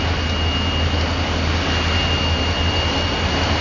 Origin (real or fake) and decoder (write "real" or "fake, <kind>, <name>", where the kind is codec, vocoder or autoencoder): real